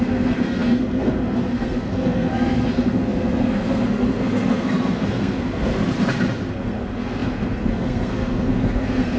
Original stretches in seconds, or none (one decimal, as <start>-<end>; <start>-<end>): 5.8-6.5